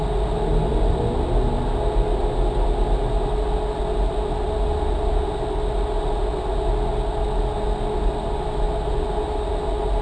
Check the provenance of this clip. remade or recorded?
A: recorded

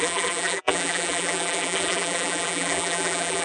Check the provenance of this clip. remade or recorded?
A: remade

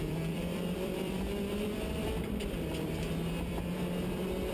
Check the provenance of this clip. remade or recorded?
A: remade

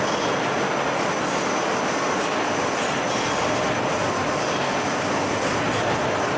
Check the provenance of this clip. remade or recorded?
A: recorded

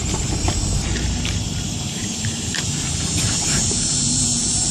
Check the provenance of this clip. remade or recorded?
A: remade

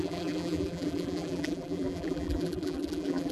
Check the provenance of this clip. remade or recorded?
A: remade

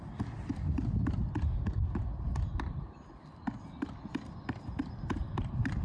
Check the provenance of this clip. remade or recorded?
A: recorded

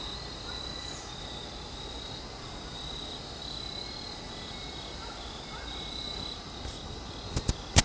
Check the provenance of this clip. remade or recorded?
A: recorded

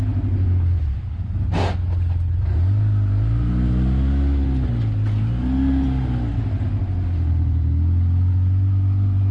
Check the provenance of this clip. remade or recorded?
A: recorded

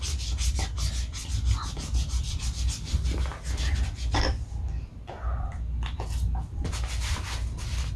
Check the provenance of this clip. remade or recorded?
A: recorded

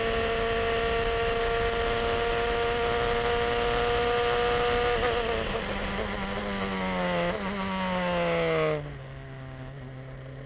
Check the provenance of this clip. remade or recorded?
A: recorded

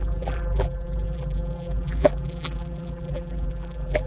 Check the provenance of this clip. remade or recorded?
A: remade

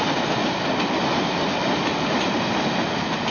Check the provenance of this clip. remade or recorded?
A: recorded